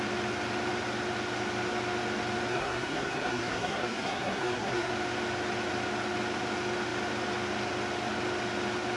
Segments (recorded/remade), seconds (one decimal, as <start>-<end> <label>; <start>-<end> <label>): 0.0-2.5 recorded; 2.5-4.9 remade; 4.9-9.0 recorded